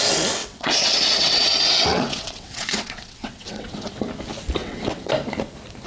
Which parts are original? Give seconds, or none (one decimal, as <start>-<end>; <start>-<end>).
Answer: 0.0-0.4; 3.9-4.6; 5.1-5.9